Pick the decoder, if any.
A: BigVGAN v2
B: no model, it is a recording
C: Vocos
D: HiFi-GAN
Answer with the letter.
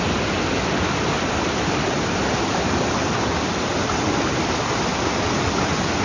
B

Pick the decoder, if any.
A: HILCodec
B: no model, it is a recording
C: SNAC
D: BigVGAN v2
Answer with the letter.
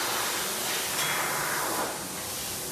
B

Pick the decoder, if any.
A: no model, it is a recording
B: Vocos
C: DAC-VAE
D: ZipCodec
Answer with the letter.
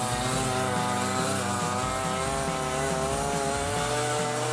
A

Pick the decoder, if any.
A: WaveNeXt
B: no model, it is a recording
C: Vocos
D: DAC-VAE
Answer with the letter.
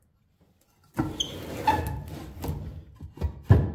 B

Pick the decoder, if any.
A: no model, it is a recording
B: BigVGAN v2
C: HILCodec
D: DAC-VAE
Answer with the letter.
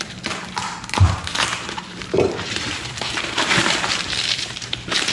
B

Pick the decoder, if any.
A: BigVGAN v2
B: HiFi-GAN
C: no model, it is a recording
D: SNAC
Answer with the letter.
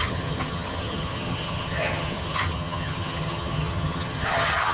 B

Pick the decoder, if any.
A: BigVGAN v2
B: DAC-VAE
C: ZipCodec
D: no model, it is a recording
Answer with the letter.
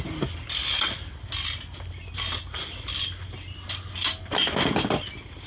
D